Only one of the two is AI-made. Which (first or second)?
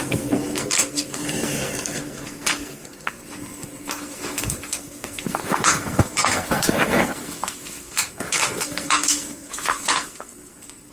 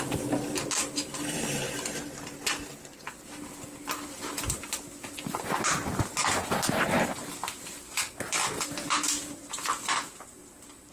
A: first